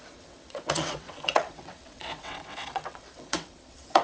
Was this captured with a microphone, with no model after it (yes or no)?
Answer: no